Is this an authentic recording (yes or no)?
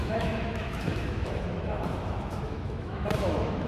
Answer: no